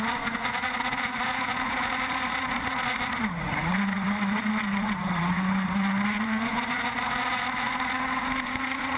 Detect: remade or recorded remade